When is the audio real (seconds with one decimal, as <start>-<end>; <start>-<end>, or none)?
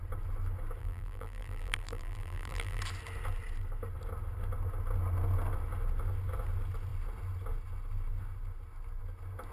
0.0-0.8; 2.8-9.5